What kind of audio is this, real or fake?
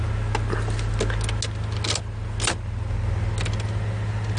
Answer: real